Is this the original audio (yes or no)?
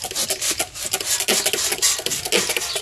yes